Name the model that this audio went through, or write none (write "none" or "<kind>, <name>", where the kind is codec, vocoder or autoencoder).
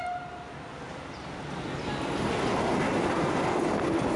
none